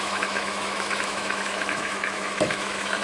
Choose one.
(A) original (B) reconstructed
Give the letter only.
B